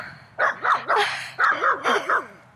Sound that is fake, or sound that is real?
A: real